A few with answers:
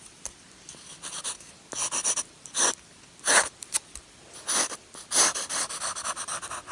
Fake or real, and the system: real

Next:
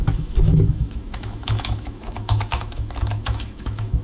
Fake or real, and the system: fake, autoencoder, DAC-VAE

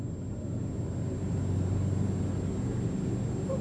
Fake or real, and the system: real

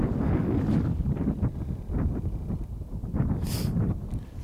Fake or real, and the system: real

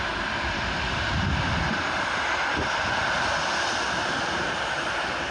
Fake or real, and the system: real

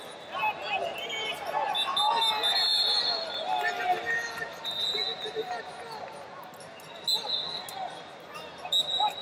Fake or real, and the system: real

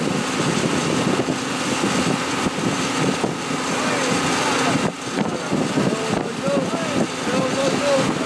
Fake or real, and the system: real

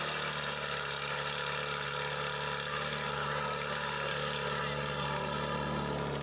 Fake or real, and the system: real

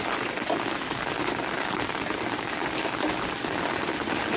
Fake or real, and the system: real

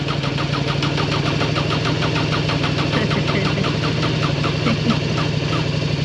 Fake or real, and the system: real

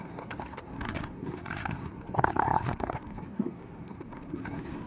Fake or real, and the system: fake, codec, SNAC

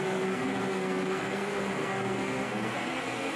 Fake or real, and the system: fake, codec, SNAC